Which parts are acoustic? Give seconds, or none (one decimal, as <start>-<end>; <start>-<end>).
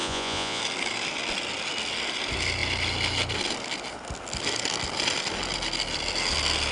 0.6-6.7